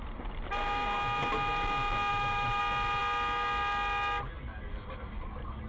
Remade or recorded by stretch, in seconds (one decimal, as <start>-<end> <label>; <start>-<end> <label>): 0.0-2.1 recorded; 2.1-2.6 remade; 2.6-5.7 recorded